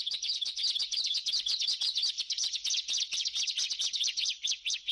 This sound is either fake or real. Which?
fake